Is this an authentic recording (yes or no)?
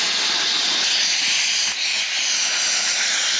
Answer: yes